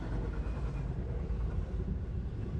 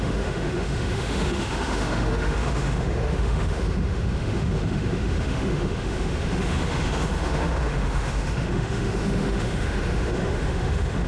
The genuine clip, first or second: first